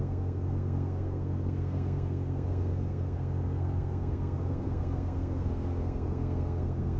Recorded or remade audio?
remade